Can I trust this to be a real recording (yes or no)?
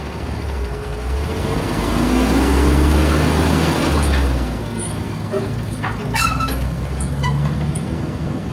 no